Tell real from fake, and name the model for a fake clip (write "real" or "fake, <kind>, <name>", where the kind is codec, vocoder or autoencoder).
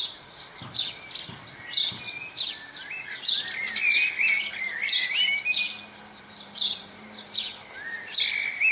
real